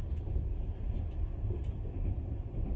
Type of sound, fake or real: real